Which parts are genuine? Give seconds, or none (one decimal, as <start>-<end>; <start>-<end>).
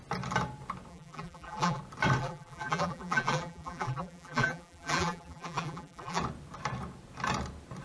0.0-0.9; 1.8-2.2; 6.2-7.8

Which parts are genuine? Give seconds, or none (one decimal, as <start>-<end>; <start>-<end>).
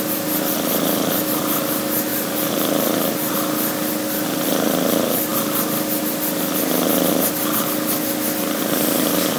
0.0-2.1; 3.3-9.4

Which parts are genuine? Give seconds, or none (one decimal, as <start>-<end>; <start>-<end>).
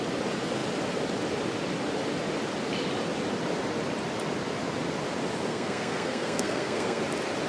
0.0-5.5; 7.0-7.5